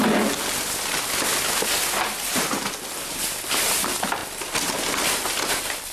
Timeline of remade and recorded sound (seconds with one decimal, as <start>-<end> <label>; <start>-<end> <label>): 0.0-5.9 recorded